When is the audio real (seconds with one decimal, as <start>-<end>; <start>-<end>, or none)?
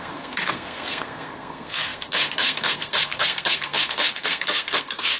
none